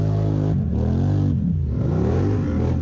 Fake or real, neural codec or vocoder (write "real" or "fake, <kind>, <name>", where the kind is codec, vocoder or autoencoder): real